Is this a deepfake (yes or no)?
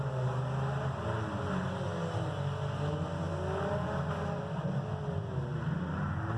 no